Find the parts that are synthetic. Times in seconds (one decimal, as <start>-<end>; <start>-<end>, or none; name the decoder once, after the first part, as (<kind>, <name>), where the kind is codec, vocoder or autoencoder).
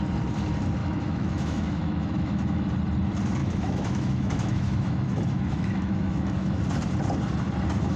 0.8-2.7 (autoencoder, DAC-VAE); 3.4-6.6